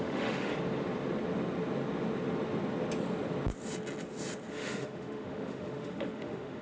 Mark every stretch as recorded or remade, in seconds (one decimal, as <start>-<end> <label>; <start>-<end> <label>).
0.0-0.5 remade; 0.5-4.5 recorded; 4.5-6.6 remade